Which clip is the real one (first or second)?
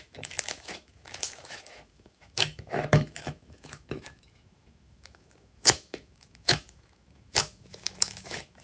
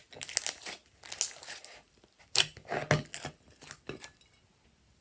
second